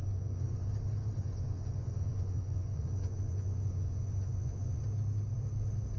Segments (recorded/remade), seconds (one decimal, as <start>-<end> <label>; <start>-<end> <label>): 0.0-0.7 remade; 0.7-1.2 recorded; 1.2-4.8 remade; 4.8-6.0 recorded

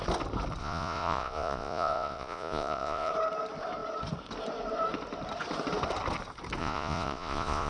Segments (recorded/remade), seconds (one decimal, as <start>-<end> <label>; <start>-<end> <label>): 0.0-0.6 recorded; 0.6-3.1 remade; 3.1-6.6 recorded; 6.6-7.7 remade

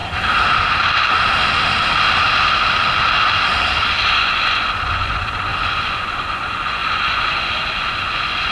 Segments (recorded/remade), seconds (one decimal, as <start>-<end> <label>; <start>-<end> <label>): 0.0-4.1 recorded; 4.1-8.5 remade

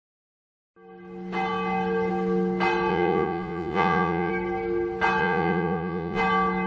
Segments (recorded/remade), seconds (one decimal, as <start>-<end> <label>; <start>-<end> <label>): 0.0-2.9 recorded; 2.9-4.3 remade; 4.3-5.2 recorded; 5.2-6.2 remade; 6.2-6.7 recorded